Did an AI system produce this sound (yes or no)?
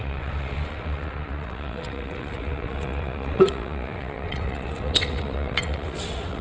yes